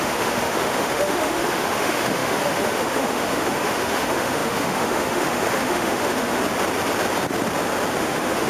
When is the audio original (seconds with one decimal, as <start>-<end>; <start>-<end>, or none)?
6.4-8.0